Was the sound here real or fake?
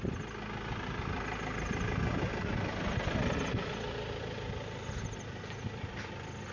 real